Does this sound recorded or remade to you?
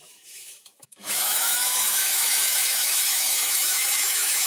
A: remade